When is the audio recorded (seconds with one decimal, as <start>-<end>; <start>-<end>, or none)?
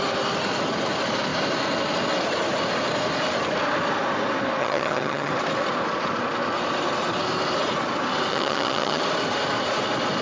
0.0-4.6; 5.3-8.3; 9.0-10.2